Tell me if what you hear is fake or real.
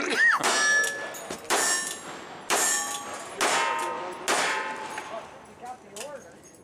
real